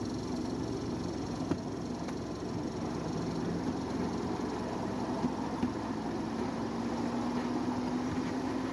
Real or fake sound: real